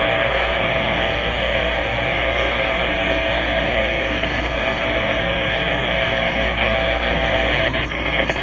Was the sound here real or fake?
fake